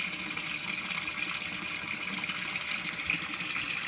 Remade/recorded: recorded